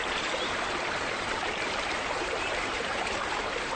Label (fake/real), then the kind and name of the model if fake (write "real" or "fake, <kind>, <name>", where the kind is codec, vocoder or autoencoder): fake, vocoder, BigVGAN v2